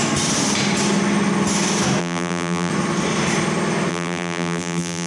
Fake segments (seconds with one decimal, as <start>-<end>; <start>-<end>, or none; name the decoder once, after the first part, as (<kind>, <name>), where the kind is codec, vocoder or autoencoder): 2.0-2.7 (vocoder, BigVGAN v2); 3.9-5.1